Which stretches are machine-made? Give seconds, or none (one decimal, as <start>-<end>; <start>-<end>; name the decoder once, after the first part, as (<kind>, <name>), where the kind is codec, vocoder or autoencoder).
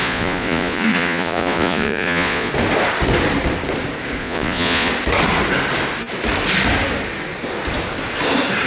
0.0-2.5 (vocoder, Vocos); 4.2-4.9